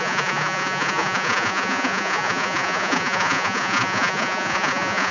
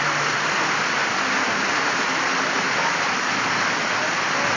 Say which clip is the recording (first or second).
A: second